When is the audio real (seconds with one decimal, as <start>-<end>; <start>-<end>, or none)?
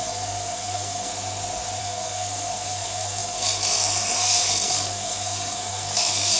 1.1-1.8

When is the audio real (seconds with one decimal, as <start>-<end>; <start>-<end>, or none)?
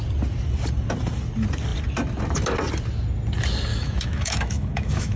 0.0-3.7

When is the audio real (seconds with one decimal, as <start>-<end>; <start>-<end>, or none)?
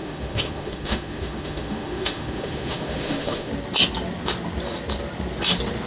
3.5-5.9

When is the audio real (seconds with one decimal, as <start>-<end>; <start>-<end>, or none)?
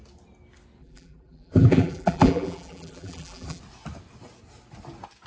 0.0-0.8; 3.6-5.3